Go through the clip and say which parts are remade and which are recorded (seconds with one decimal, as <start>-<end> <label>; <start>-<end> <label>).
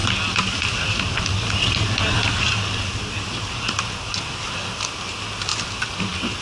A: 0.0-6.4 recorded